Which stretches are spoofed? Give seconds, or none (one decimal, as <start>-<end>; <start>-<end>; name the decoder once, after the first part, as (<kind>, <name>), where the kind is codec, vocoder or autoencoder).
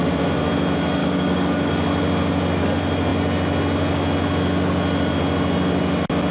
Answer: 1.0-1.7 (codec, DAC)